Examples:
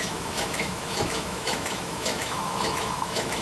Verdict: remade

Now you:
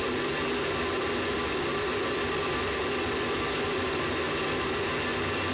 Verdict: recorded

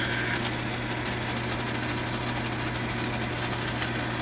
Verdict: recorded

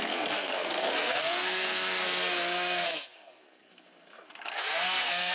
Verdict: remade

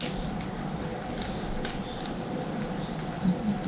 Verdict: recorded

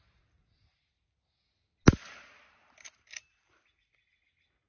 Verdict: recorded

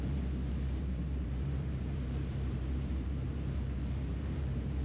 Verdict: remade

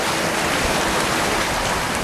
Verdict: recorded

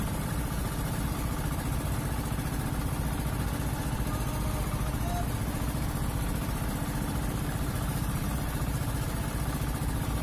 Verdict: recorded